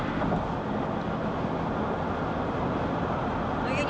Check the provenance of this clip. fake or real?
real